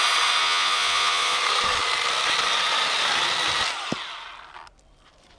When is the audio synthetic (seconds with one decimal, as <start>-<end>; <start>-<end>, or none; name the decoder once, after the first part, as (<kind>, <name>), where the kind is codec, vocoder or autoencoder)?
0.4-1.4 (vocoder, Vocos)